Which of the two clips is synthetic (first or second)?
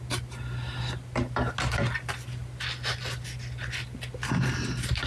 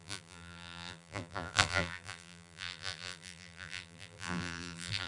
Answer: second